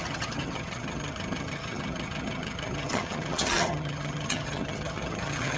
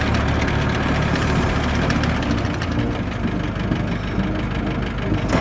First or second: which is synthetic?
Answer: first